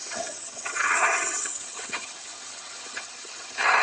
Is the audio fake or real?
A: fake